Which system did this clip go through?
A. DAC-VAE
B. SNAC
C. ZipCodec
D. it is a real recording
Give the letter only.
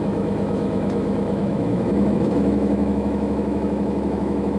A